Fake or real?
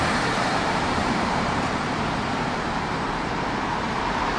fake